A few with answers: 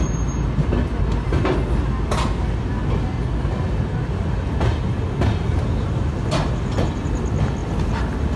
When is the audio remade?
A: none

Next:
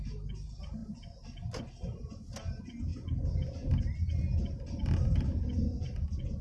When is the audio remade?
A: none

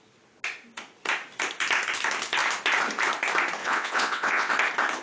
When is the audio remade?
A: 3.6-4.5 (vocoder, WaveNeXt)

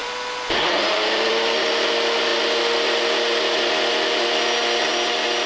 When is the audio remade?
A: 0.0-1.3 (vocoder, BigVGAN v2)

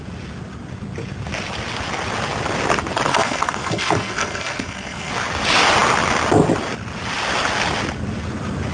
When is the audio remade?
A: 3.1-5.1 (codec, SNAC)

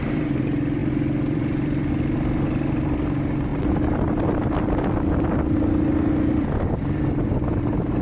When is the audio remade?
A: 0.8-1.9 (vocoder, BigVGAN v2)

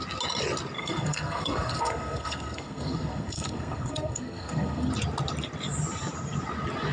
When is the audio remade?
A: 0.8-4.9 (codec, SNAC)